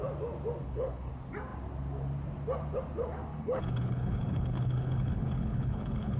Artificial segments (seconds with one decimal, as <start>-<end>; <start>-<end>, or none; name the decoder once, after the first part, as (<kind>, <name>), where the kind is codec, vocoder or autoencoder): 0.6-1.1 (codec, HILCodec); 3.3-6.2